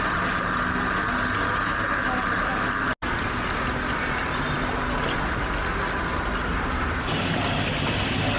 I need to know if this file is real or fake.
real